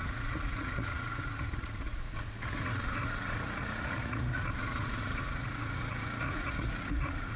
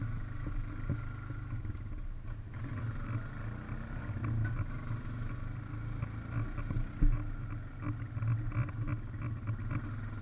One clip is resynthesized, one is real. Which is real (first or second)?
second